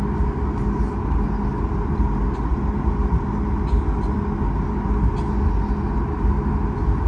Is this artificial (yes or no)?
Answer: no